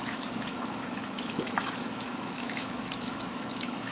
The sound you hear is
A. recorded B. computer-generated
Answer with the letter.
B